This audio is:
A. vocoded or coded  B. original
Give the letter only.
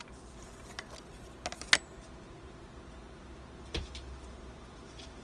B